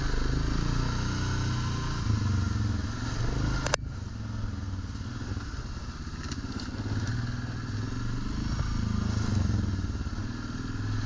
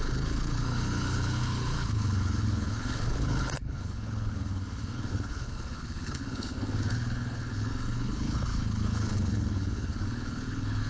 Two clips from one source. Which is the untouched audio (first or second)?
first